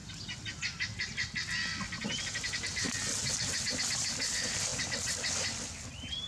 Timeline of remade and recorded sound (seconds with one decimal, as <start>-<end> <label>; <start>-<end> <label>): 0.0-6.3 recorded